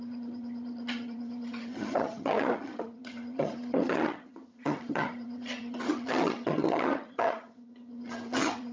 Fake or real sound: fake